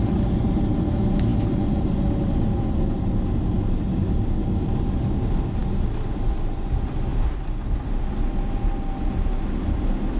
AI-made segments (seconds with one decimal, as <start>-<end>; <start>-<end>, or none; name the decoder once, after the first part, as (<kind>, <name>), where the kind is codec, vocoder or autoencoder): none